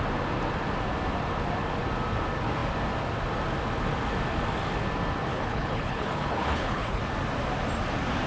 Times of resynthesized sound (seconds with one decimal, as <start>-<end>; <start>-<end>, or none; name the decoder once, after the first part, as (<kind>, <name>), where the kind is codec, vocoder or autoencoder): 5.3-7.0 (codec, HILCodec)